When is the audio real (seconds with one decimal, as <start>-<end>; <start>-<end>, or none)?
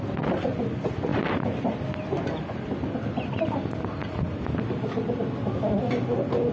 0.0-6.5